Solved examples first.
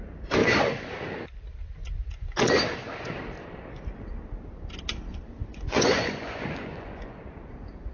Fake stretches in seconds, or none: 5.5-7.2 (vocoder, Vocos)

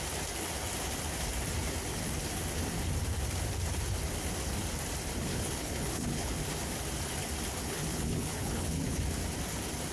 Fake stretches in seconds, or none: 5.3-6.4 (codec, HILCodec); 7.6-9.0

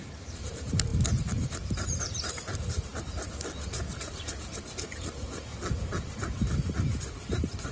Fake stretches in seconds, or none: 0.0-2.9 (vocoder, BigVGAN v2); 4.1-5.5; 7.0-7.7

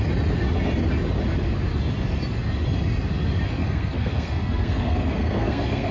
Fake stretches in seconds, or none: 3.6-5.9 (codec, SNAC)

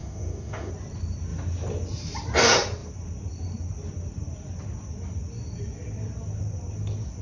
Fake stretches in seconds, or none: 0.0-0.7 (autoencoder, DAC-VAE)

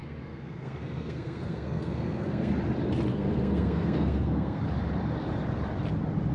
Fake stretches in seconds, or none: 0.0-2.5 (codec, SNAC); 3.1-4.6

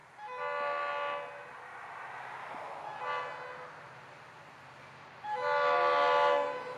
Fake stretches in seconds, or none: none